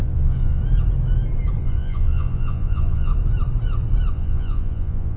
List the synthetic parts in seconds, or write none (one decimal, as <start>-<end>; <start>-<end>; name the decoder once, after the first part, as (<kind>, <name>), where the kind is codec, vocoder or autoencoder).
0.0-0.6 (vocoder, Vocos); 1.6-3.1; 4.1-5.2